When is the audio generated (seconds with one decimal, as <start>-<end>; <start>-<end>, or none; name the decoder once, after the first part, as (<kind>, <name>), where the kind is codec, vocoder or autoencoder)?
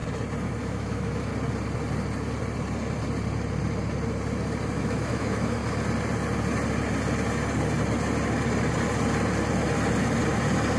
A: 0.6-1.3 (autoencoder, DAC-VAE); 4.8-5.6